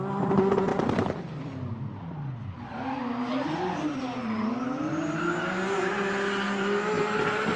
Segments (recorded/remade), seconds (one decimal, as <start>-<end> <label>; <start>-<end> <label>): 0.0-7.6 recorded